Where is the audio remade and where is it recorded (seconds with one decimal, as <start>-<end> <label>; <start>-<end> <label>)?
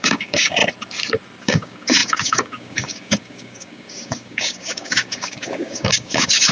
0.0-0.6 remade; 0.6-1.4 recorded; 1.4-6.5 remade